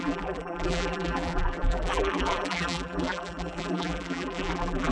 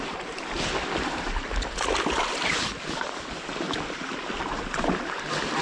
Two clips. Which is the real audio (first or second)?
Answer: second